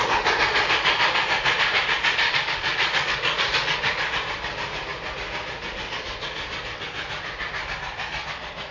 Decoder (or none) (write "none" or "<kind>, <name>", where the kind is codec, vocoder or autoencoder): none